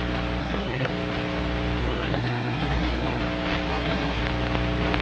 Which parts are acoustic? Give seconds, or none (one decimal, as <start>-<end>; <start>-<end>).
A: 0.0-0.4; 0.9-1.8; 3.2-3.7; 4.2-5.0

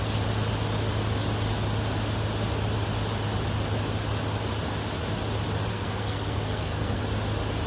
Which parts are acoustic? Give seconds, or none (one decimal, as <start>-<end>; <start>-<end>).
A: 0.0-5.7; 7.0-7.7

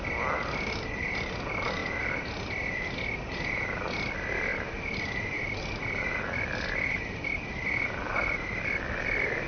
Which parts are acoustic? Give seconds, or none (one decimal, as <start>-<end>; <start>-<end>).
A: 0.0-9.5

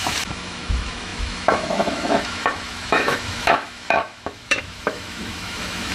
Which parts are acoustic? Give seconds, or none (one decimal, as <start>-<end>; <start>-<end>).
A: none

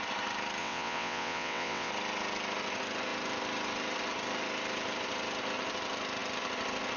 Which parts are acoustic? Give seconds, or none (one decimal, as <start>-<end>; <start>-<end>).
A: 0.0-0.6; 1.9-7.0

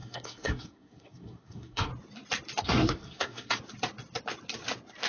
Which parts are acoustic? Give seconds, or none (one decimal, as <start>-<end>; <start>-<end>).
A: 1.9-2.6; 3.6-5.1

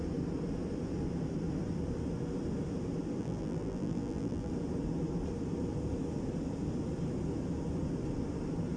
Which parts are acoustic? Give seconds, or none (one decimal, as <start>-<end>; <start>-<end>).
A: 0.0-3.2; 4.5-8.8

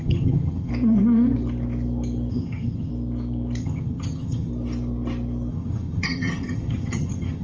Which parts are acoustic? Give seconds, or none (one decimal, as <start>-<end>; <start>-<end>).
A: 0.7-2.3; 2.9-3.6; 4.5-5.5